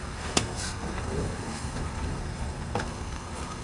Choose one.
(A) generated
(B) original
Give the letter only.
A